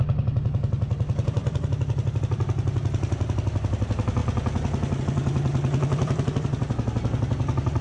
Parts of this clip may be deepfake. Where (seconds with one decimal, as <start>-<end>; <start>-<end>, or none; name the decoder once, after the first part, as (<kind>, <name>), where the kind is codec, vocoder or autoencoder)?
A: none